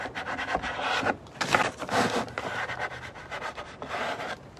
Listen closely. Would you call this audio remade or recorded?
recorded